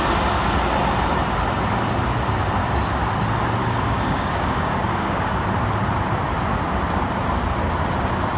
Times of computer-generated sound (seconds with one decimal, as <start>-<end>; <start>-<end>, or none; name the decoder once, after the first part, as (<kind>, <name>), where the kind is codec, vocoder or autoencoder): 3.6-5.3 (codec, DAC)